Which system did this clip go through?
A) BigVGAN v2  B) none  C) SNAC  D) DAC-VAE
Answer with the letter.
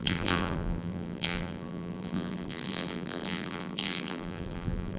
A